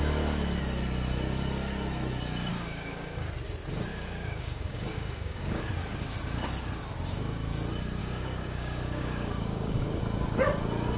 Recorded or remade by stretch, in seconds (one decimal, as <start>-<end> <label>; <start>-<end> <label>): 0.0-2.5 recorded; 2.5-3.3 remade; 3.3-3.9 recorded; 3.9-5.7 remade; 5.7-8.0 recorded; 8.0-10.0 remade; 10.0-11.0 recorded